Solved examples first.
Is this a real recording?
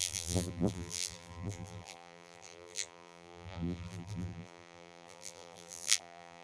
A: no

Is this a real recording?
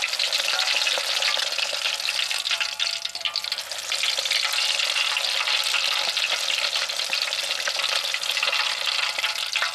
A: yes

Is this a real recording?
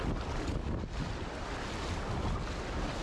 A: yes